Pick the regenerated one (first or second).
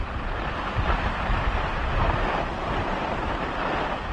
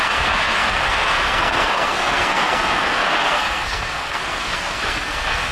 second